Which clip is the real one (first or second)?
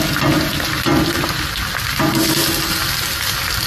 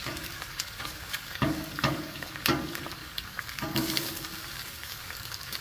first